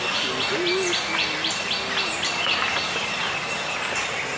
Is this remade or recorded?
recorded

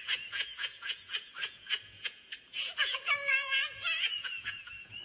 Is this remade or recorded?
remade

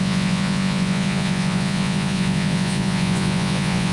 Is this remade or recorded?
remade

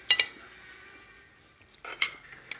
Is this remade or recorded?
recorded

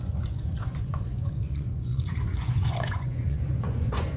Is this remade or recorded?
remade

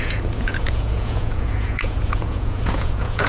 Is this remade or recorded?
remade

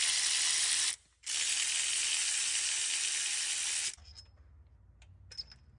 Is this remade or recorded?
recorded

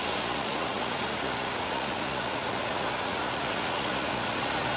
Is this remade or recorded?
remade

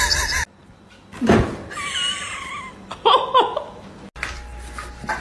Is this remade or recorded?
recorded